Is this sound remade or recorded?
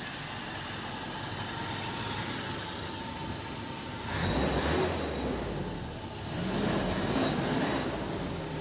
recorded